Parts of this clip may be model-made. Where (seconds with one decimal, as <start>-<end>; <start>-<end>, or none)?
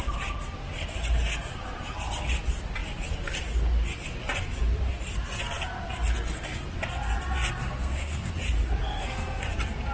7.8-8.3; 8.8-9.4